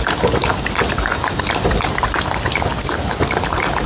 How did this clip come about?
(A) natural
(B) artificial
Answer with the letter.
A